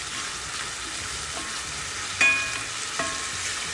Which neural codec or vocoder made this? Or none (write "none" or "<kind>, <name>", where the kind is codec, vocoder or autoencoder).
none